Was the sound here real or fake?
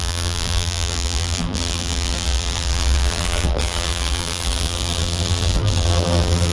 fake